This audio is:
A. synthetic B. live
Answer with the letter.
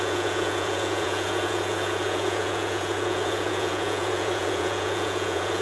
A